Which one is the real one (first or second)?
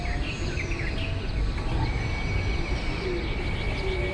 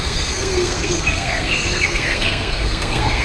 first